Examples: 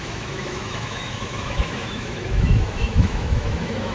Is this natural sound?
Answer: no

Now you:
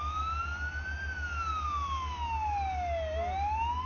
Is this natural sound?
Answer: yes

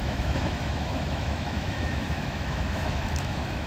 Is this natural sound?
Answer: no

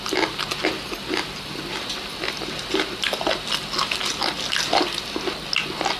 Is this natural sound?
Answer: yes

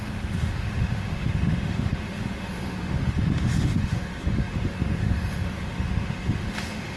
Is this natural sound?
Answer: no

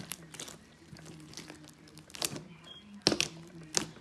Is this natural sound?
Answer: yes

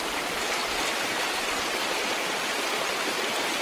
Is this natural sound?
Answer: yes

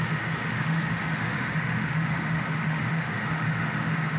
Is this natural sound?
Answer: no